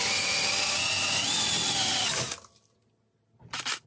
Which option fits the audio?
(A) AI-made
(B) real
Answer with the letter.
B